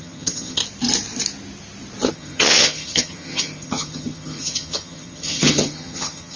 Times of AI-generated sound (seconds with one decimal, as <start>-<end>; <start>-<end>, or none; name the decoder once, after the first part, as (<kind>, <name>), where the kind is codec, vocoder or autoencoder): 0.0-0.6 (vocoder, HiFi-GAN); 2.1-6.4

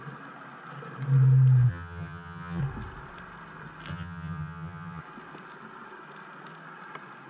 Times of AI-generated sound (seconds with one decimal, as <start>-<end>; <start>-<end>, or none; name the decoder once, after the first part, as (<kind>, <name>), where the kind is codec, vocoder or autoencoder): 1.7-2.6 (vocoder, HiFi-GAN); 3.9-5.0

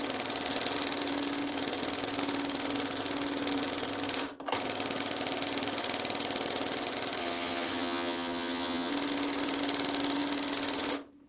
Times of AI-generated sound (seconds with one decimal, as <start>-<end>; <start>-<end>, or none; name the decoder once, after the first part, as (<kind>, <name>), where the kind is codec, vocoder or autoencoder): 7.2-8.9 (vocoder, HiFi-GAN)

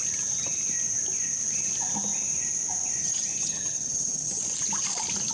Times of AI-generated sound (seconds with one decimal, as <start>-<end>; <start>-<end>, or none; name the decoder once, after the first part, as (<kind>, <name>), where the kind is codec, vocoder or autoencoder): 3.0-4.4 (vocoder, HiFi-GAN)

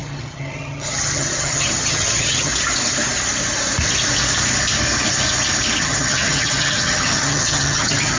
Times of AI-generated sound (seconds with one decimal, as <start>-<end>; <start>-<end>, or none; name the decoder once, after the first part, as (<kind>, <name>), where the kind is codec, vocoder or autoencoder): 0.0-2.5 (vocoder, HiFi-GAN); 5.8-8.2